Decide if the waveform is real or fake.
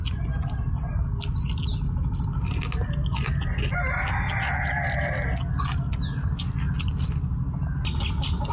real